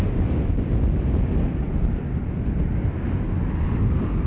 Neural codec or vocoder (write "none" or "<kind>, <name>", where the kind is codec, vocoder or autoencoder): none